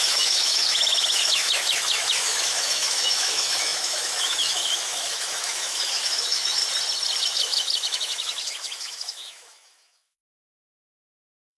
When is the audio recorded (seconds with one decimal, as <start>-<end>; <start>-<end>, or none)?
6.6-7.2